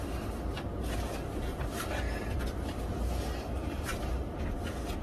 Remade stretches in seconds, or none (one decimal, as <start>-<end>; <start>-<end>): 1.5-4.5

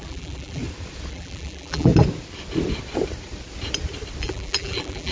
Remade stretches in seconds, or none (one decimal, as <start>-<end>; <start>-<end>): 0.0-0.6; 1.1-1.9; 4.2-5.1

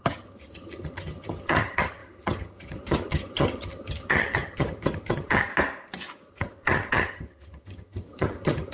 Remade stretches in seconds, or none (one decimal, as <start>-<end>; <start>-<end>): 0.0-5.5; 6.3-8.7

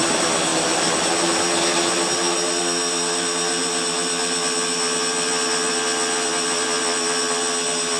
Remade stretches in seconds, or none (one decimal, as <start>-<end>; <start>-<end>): none